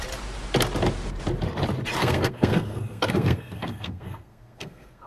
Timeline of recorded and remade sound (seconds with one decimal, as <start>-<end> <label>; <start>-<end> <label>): 0.0-2.0 recorded; 2.0-5.1 remade